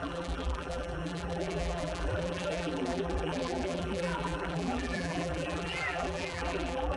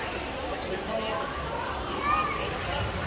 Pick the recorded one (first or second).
second